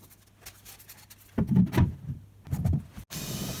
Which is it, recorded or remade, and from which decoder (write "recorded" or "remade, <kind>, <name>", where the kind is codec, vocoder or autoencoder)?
recorded